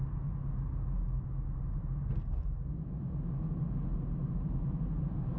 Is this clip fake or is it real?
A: real